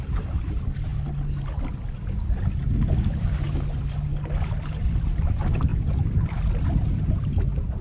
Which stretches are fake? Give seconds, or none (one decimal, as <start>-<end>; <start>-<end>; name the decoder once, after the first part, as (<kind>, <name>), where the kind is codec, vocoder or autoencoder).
none